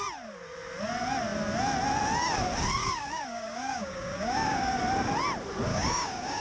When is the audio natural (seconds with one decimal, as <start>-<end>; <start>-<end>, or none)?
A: 0.0-2.8; 4.8-5.7